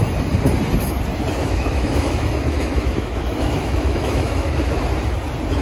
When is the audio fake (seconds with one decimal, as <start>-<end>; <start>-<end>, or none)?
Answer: 1.4-4.8